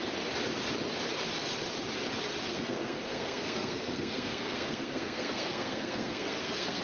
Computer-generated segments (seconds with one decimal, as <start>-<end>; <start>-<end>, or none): 2.5-6.8